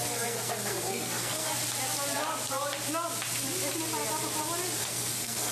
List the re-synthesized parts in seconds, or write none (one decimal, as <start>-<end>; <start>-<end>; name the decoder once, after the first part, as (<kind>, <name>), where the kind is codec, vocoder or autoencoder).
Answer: 0.0-1.5 (codec, SNAC); 4.8-5.5